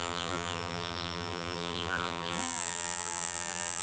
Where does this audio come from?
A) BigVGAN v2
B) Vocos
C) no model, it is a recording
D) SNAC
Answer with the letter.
A